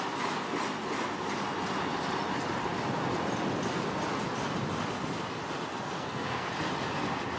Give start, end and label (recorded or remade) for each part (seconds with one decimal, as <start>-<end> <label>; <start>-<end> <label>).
0.0-5.7 recorded; 5.7-6.5 remade; 6.5-7.4 recorded